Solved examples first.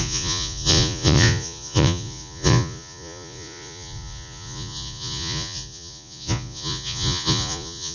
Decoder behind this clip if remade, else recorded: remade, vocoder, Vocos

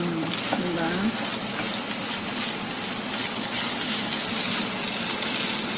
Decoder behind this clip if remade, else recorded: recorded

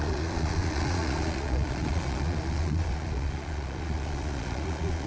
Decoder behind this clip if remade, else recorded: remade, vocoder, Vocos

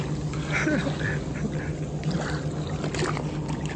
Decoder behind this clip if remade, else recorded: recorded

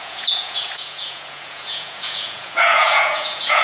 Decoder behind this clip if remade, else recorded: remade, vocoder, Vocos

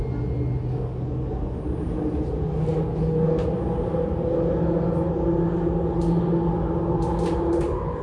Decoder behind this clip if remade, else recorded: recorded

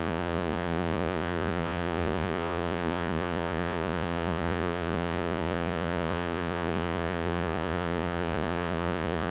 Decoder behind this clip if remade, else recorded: remade, vocoder, Vocos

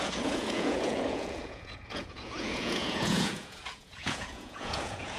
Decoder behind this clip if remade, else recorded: remade, vocoder, Vocos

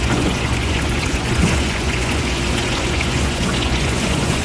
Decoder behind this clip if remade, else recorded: remade, vocoder, Vocos